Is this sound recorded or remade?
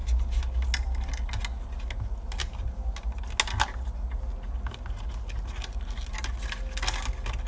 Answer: recorded